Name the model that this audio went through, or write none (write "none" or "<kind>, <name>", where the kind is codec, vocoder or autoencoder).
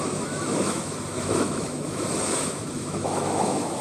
autoencoder, DAC-VAE